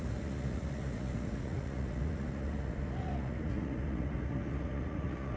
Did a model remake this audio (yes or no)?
yes